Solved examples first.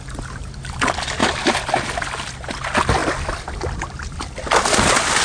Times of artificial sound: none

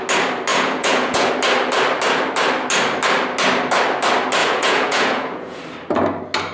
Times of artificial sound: 0.5-1.3 (vocoder, Vocos); 4.4-5.6

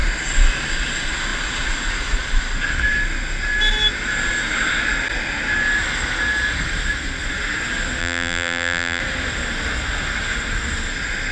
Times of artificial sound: 8.0-9.0 (vocoder, BigVGAN v2)

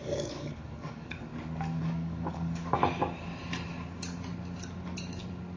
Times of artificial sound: 0.0-1.3 (codec, DAC); 1.8-2.8

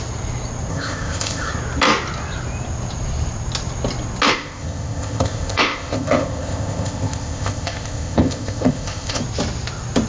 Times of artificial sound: 0.7-1.5 (codec, ZipCodec); 4.3-9.2

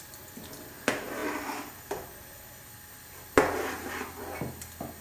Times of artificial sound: none